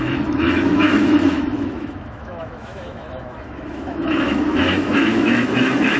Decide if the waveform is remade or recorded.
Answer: remade